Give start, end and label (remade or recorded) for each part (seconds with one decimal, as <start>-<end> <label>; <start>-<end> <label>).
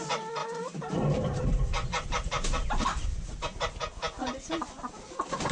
0.0-0.4 recorded; 0.4-3.3 remade; 3.3-5.5 recorded